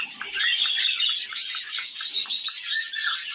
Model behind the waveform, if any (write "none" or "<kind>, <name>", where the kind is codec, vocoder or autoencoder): none